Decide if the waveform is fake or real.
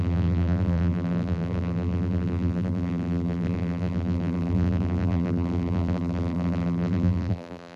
fake